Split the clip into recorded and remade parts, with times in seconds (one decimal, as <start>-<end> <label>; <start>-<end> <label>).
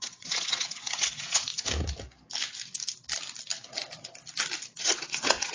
0.0-1.5 remade; 1.5-4.8 recorded; 4.8-5.5 remade